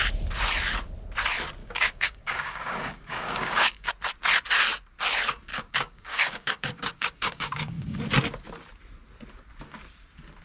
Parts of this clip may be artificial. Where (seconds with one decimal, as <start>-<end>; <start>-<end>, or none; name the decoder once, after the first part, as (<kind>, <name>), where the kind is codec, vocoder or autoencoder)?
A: 1.6-3.9 (codec, DAC); 5.5-8.0